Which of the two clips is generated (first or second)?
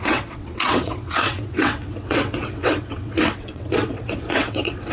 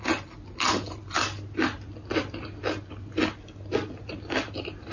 first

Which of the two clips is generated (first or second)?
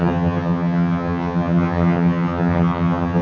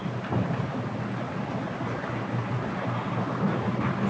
first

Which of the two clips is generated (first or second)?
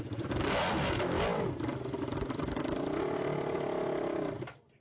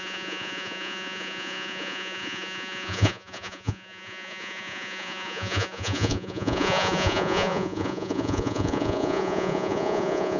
second